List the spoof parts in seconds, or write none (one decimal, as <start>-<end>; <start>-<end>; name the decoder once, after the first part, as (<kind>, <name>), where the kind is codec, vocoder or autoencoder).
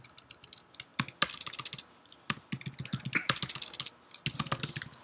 none